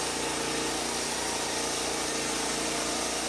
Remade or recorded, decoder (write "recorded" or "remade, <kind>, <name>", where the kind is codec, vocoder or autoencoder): recorded